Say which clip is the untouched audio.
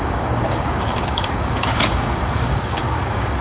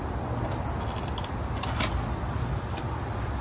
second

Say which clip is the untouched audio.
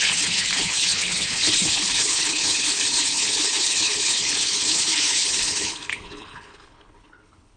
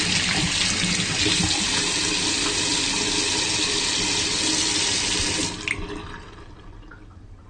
second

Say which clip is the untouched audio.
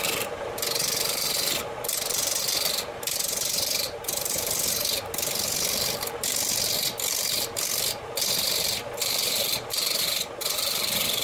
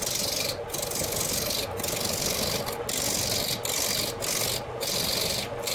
second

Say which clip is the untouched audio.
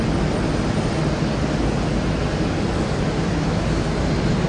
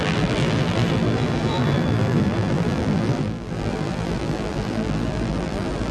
first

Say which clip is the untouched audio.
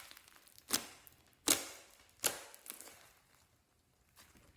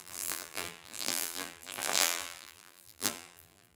first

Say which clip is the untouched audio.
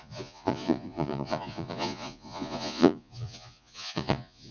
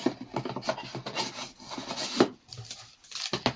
second